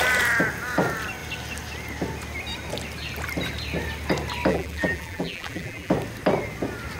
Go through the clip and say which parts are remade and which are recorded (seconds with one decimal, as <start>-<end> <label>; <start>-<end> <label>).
0.0-4.5 recorded; 4.5-5.9 remade; 5.9-7.0 recorded